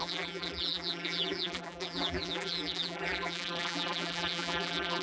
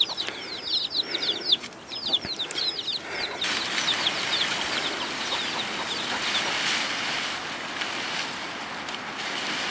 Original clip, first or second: second